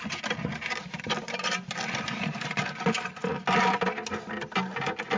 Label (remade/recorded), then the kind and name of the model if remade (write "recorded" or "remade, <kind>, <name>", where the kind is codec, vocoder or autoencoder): recorded